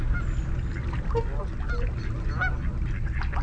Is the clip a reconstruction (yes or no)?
no